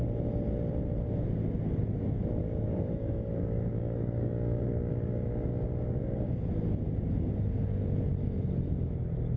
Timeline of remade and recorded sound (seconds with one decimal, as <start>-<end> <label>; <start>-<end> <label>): 0.0-2.4 recorded; 2.4-6.5 remade; 6.5-9.4 recorded